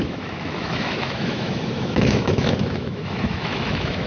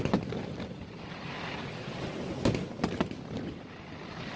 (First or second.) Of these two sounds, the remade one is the first